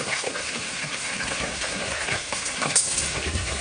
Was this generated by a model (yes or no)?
yes